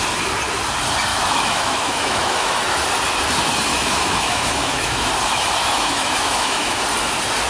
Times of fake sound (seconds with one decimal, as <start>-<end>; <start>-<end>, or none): 1.1-2.6; 3.7-5.1; 5.6-6.8